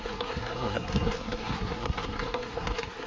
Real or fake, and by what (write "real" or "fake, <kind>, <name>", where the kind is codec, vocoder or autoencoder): fake, codec, SNAC